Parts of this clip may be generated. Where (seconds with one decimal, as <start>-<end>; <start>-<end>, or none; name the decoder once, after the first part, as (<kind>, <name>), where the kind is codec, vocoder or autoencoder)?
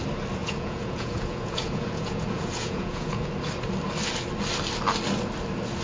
0.4-3.3 (vocoder, Vocos)